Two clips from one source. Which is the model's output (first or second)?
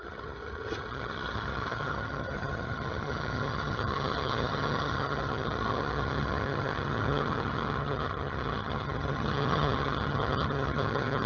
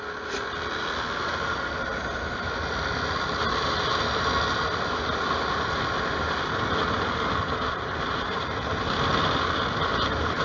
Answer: first